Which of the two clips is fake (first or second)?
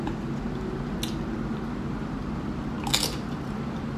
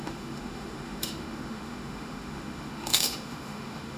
second